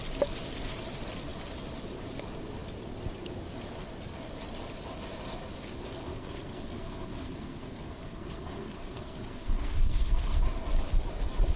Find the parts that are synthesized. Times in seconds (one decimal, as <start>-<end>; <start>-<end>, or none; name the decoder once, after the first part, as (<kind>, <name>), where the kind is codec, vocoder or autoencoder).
6.1-10.4 (codec, SNAC)

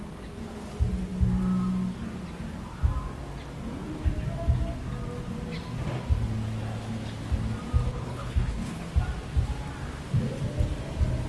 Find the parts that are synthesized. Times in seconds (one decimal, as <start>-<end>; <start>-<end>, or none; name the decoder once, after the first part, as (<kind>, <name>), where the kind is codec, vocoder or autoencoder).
7.9-8.8 (codec, HILCodec)

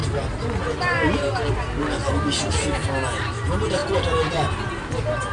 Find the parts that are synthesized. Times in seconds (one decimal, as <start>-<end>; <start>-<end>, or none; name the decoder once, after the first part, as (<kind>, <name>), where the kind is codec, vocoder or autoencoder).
none

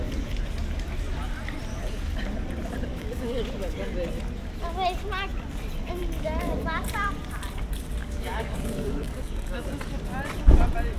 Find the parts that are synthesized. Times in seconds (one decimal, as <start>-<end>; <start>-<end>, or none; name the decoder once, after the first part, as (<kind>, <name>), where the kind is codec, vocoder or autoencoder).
2.9-3.4 (codec, DAC); 8.0-9.8